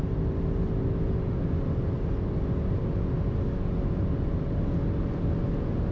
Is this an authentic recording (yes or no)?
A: yes